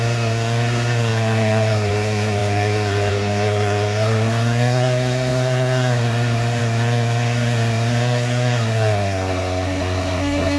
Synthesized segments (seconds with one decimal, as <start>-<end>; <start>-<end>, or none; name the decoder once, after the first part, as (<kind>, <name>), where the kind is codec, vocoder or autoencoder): 0.0-10.6 (codec, SNAC)